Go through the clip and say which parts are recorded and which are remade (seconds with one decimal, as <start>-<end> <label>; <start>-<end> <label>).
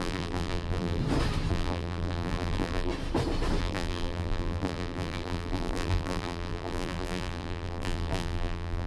0.0-1.0 remade; 1.0-1.5 recorded; 1.5-2.9 remade; 2.9-3.6 recorded; 3.6-8.9 remade